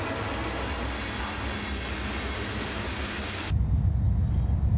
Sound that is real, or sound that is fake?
real